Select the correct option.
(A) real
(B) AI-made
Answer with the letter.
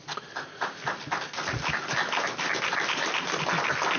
A